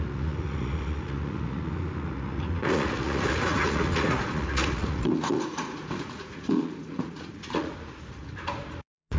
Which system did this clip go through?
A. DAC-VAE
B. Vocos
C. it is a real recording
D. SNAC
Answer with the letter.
B